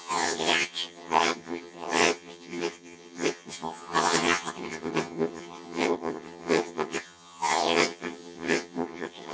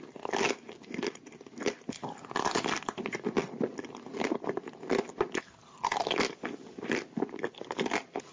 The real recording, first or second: second